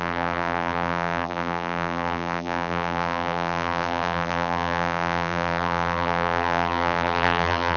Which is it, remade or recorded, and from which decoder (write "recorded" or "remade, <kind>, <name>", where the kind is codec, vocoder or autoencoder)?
remade, vocoder, BigVGAN v2